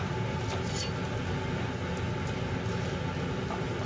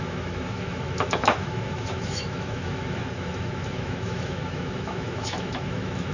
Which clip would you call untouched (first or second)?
first